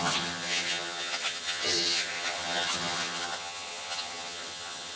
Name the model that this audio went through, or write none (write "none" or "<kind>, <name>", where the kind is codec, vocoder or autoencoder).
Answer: vocoder, HiFi-GAN